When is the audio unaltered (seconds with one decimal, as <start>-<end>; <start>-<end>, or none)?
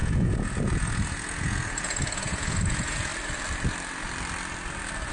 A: 3.1-5.1